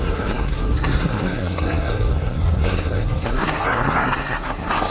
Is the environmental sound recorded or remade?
remade